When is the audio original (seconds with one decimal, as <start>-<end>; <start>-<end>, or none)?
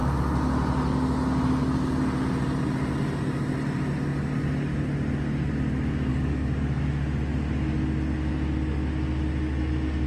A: 0.0-6.1; 6.8-10.1